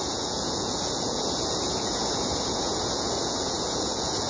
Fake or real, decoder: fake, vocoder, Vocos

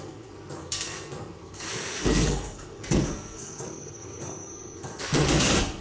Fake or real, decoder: fake, codec, SNAC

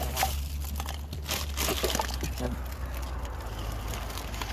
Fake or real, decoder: real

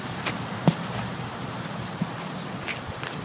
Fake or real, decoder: real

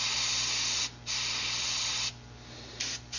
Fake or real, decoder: real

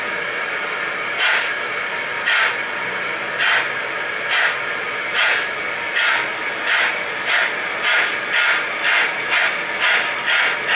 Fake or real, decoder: real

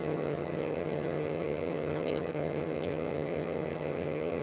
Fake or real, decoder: fake, vocoder, HiFi-GAN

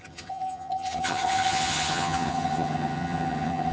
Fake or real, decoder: fake, vocoder, HiFi-GAN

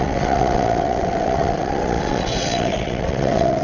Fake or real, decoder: fake, vocoder, WaveNeXt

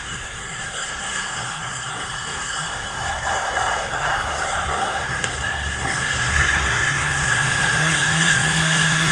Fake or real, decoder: fake, codec, SNAC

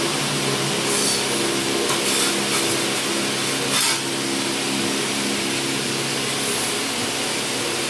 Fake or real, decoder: real